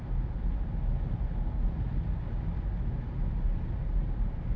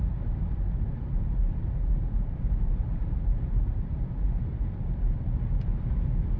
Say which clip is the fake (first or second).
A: second